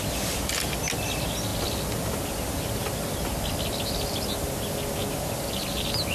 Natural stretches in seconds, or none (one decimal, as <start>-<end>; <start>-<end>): 0.0-6.1